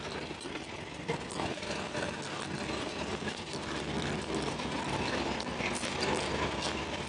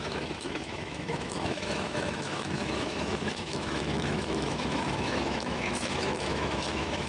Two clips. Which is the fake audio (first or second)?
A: second